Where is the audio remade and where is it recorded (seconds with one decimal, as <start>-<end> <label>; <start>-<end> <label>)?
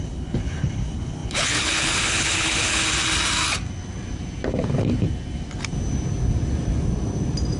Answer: 0.0-2.8 remade; 2.8-7.6 recorded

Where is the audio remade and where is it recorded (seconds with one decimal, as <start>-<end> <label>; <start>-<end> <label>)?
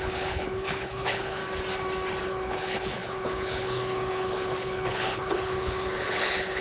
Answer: 0.0-1.4 remade; 1.4-2.2 recorded; 2.2-6.6 remade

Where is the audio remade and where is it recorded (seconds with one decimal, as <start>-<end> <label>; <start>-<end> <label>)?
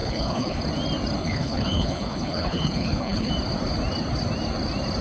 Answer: 0.0-0.6 remade; 0.6-1.2 recorded; 1.2-3.3 remade; 3.3-5.0 recorded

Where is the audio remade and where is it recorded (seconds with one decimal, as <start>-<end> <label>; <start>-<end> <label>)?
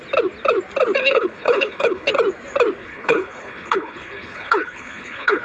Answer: 0.0-1.0 recorded; 1.0-2.1 remade; 2.1-2.8 recorded; 2.8-5.4 remade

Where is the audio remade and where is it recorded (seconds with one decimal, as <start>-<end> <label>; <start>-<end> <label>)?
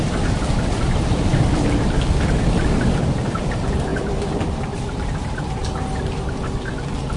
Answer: 0.0-7.2 recorded